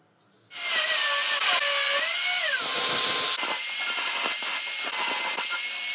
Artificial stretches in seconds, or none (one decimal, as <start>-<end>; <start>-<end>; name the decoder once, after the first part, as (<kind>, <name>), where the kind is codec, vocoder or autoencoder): none